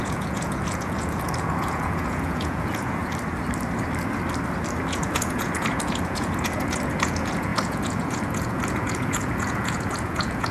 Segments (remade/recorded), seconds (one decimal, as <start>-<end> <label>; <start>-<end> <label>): 0.0-3.0 remade; 3.0-4.9 recorded; 4.9-10.5 remade